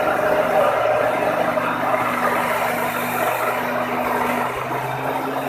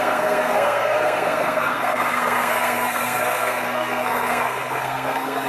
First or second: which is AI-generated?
second